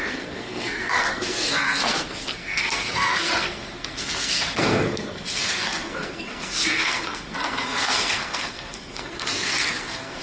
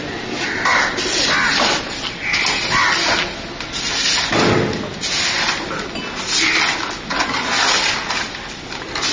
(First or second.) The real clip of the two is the second